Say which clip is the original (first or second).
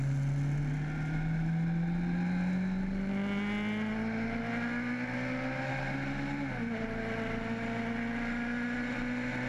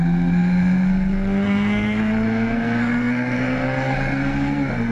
first